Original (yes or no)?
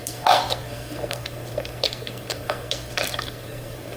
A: no